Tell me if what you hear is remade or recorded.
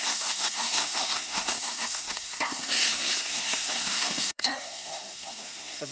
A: remade